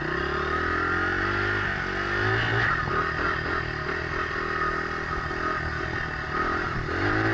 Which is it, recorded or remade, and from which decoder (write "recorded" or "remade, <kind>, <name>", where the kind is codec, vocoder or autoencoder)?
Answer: recorded